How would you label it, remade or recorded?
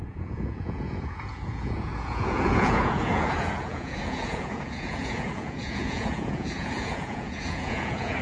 remade